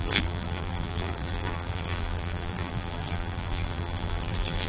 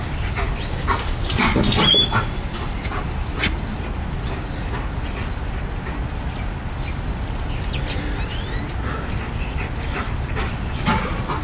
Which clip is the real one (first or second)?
second